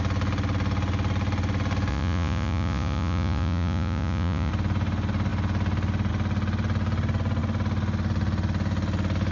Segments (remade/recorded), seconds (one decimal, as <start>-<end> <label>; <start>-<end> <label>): 0.0-1.9 recorded; 1.9-4.5 remade; 4.5-9.3 recorded

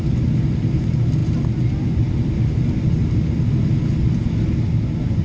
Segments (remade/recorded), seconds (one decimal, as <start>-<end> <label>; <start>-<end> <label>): 0.0-5.2 recorded